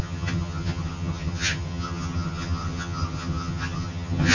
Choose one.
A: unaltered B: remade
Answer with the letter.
B